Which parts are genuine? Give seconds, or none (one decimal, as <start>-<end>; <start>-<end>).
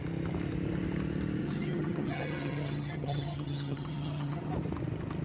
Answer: 0.0-1.4; 4.5-5.2